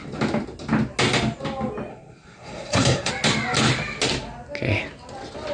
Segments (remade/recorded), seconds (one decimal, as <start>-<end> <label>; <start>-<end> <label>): 0.0-1.9 recorded; 1.9-3.1 remade; 3.1-5.5 recorded